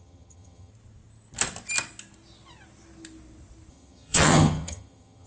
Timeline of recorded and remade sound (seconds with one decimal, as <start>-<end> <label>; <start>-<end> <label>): 0.0-0.7 remade; 0.7-3.7 recorded; 3.7-5.3 remade